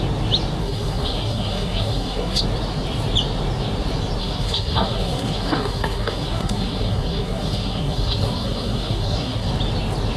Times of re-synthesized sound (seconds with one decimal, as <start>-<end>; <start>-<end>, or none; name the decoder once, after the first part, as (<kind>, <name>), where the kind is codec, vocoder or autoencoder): 0.6-2.4 (codec, SNAC); 4.2-9.5